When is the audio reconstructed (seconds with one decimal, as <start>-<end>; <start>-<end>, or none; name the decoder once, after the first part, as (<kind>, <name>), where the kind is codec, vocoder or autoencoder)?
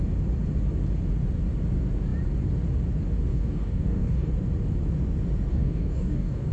3.3-4.3 (codec, DAC); 5.5-6.5